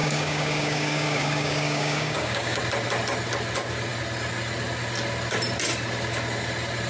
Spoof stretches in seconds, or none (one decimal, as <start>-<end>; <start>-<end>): 0.0-2.6